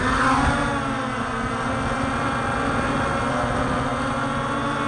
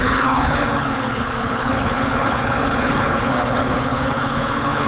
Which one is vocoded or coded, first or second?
second